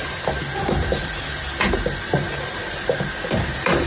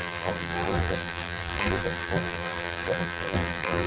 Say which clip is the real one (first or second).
first